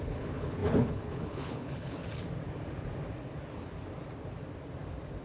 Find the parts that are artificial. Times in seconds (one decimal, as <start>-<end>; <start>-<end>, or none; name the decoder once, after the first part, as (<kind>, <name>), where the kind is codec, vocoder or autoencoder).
0.0-2.0 (codec, HILCodec)